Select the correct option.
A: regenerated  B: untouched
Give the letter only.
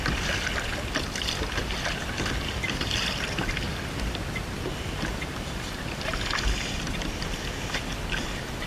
B